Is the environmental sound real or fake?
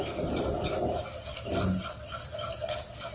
real